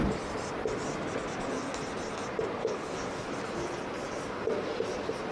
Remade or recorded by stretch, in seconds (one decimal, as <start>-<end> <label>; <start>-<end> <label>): 0.0-2.6 recorded; 2.6-3.3 remade; 3.3-5.3 recorded

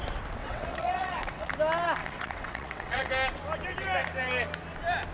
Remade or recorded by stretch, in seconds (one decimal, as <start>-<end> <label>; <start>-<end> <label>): 0.0-0.4 recorded; 0.4-1.5 remade; 1.5-2.0 recorded; 2.0-3.1 remade; 3.1-5.1 recorded

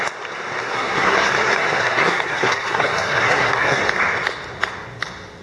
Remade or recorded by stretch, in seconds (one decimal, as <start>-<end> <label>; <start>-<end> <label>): 0.0-0.6 recorded; 0.6-3.8 remade; 3.8-5.4 recorded